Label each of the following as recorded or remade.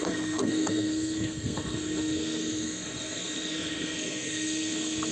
remade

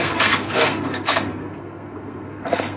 remade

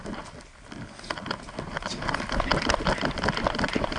recorded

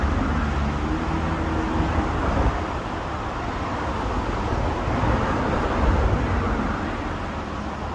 recorded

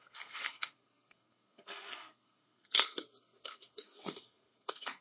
remade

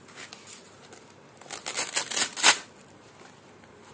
recorded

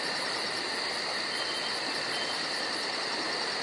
recorded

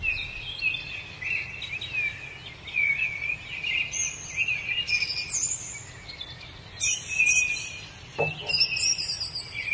recorded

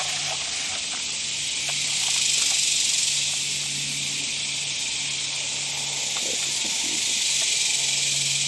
recorded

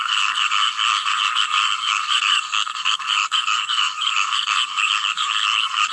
remade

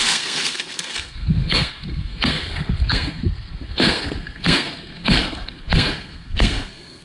remade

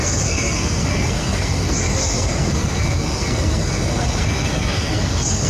remade